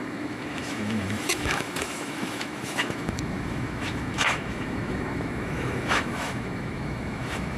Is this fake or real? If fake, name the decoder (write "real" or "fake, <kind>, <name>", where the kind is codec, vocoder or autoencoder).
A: fake, autoencoder, DAC-VAE